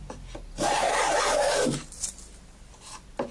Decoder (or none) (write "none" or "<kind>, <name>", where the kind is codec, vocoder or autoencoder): none